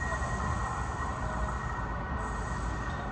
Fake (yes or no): no